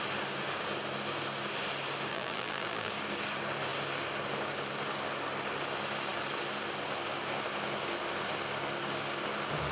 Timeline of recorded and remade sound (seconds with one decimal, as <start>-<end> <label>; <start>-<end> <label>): 0.0-2.1 recorded; 2.1-2.9 remade; 2.9-9.7 recorded